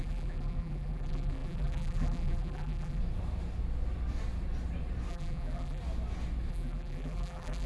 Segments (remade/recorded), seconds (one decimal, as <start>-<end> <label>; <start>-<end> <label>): 0.0-3.0 remade; 3.0-5.1 recorded; 5.1-5.8 remade; 5.8-6.5 recorded; 6.5-7.7 remade